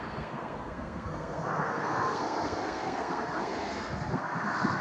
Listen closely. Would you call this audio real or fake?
fake